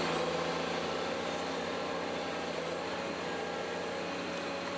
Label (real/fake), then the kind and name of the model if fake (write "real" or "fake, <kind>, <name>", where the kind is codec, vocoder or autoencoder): real